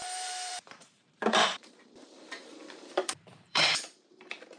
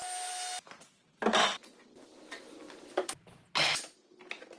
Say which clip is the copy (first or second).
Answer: first